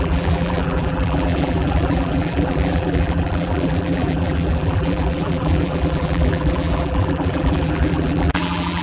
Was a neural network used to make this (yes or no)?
yes